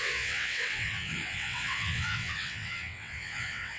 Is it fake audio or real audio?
fake